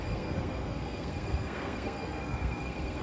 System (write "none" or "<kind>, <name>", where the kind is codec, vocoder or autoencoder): codec, SNAC